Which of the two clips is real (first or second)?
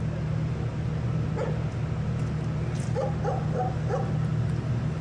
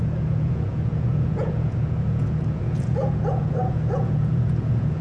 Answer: first